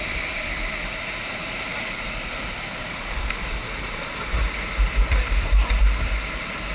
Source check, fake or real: real